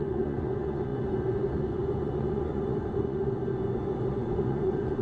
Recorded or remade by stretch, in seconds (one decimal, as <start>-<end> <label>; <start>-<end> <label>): 0.0-3.4 remade; 3.4-4.1 recorded; 4.1-5.0 remade